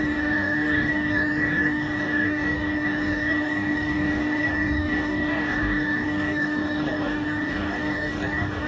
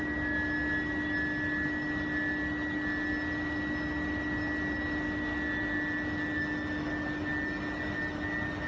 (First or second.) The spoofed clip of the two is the first